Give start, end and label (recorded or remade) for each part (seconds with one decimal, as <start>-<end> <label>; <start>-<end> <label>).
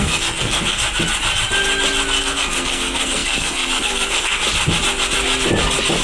0.0-0.8 remade; 0.8-2.2 recorded; 2.2-4.4 remade; 4.4-6.0 recorded